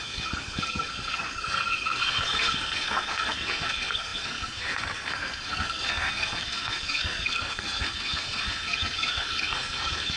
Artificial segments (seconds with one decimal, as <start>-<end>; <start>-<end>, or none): 0.0-10.2